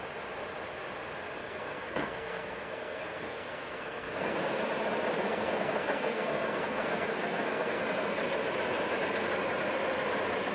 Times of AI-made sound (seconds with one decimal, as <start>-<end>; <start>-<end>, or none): 1.4-4.6; 5.2-7.8